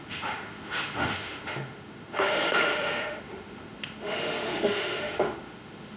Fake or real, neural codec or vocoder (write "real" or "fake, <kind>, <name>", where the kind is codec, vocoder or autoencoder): fake, autoencoder, DAC-VAE